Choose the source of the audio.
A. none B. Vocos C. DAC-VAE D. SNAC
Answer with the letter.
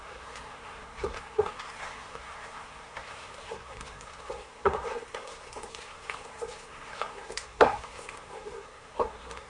D